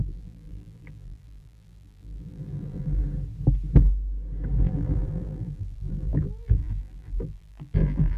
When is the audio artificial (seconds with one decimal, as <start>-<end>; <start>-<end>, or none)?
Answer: 0.0-3.0; 4.6-8.2